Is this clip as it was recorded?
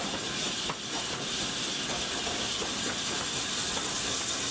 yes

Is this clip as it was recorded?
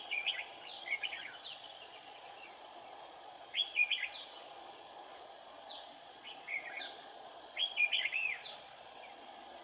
no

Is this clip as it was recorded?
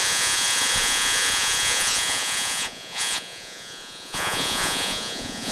no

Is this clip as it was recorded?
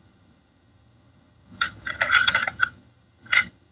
no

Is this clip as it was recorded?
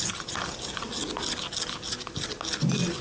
yes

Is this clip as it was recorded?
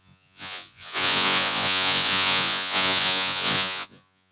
no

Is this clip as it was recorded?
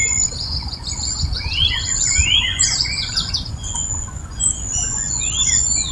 no